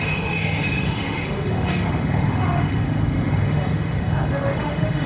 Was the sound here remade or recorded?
remade